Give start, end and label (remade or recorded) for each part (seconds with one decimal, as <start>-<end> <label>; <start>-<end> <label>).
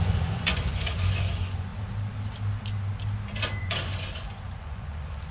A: 0.0-1.7 remade; 1.7-3.6 recorded; 3.6-5.3 remade